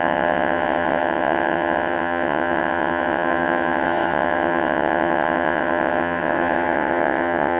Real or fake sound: fake